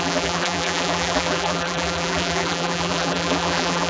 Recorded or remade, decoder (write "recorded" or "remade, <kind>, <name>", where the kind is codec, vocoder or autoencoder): remade, vocoder, BigVGAN v2